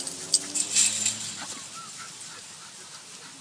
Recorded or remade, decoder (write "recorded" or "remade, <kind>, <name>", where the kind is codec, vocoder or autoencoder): recorded